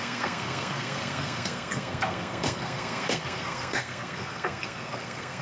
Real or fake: fake